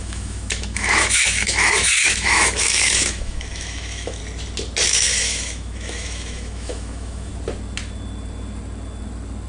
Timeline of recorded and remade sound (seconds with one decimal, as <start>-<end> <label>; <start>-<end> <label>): 0.0-4.2 remade; 4.2-4.9 recorded; 4.9-7.3 remade; 7.3-9.5 recorded